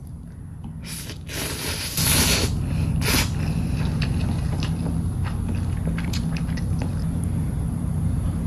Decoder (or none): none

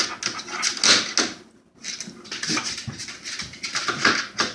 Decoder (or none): none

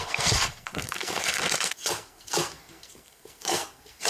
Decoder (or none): codec, SNAC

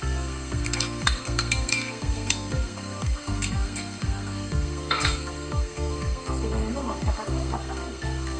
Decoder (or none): codec, SNAC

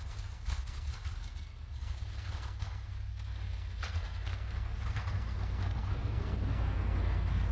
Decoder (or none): codec, SNAC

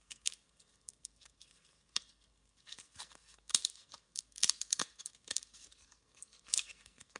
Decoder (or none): codec, SNAC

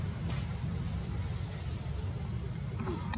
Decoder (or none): none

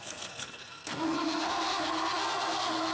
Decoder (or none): codec, SNAC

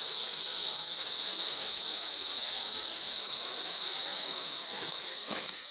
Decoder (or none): codec, SNAC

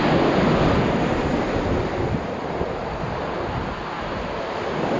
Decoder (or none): none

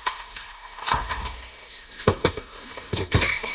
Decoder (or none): codec, SNAC